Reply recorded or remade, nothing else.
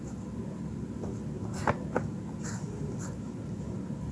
recorded